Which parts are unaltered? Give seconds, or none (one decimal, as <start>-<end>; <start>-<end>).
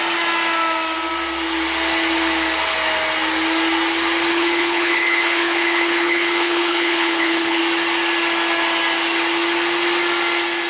0.0-4.3; 7.6-10.7